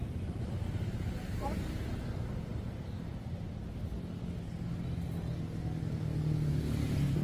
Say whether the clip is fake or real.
real